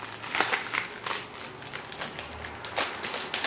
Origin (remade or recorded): recorded